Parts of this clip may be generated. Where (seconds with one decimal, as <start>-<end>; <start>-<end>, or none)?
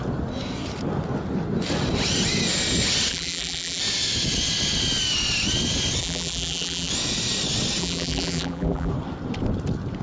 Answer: 3.1-3.8; 6.0-6.9; 7.8-8.9